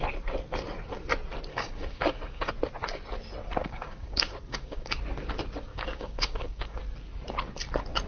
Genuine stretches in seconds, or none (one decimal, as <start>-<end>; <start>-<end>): 0.0-1.5; 2.5-3.6; 5.0-5.7; 6.8-8.1